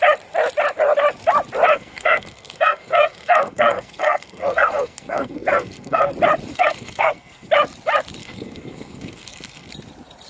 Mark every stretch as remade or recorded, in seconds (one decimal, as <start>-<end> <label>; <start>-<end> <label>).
0.0-1.7 recorded; 1.7-6.1 remade; 6.1-6.5 recorded; 6.5-7.5 remade; 7.5-8.2 recorded; 8.2-9.7 remade; 9.7-10.3 recorded